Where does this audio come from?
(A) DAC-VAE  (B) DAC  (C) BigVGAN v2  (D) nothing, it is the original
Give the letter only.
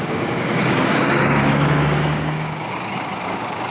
B